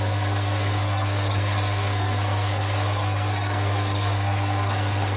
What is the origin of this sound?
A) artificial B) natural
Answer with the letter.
A